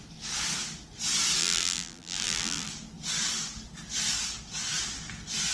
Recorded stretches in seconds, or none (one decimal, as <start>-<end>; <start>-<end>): 0.0-1.4; 2.7-5.5